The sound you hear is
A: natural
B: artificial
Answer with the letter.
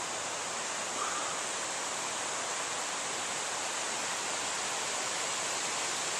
A